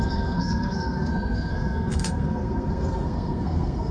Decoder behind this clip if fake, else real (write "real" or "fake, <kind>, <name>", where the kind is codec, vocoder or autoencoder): fake, codec, SNAC